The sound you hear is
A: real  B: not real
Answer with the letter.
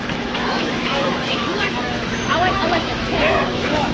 B